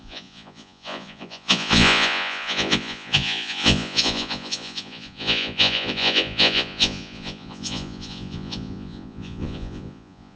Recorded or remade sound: remade